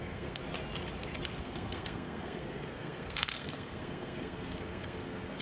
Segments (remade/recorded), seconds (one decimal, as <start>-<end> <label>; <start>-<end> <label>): 0.0-0.4 remade; 0.4-1.4 recorded; 1.4-5.4 remade